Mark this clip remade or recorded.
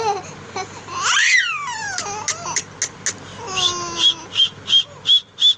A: recorded